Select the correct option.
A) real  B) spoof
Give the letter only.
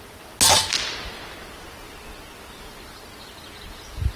A